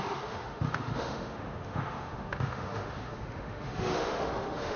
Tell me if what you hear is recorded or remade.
remade